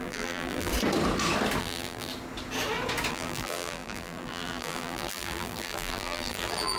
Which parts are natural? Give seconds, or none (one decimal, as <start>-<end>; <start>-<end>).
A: 0.7-1.6; 2.1-3.1